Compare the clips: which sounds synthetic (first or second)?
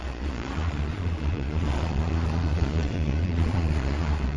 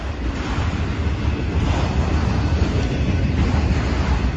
first